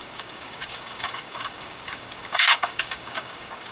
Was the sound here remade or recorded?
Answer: remade